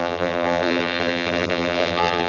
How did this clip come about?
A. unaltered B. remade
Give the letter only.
B